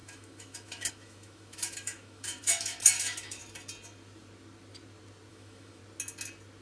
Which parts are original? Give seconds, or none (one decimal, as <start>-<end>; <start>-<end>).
3.4-5.3; 5.8-6.6